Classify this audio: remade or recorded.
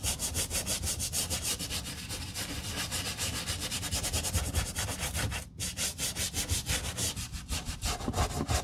remade